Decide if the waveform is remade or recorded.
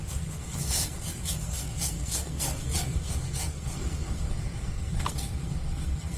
remade